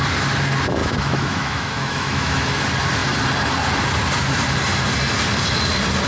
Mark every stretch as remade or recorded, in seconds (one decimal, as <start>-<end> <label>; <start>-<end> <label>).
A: 0.0-0.8 recorded; 0.8-2.6 remade; 2.6-6.1 recorded